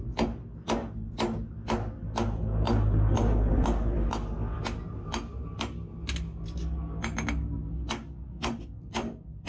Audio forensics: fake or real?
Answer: real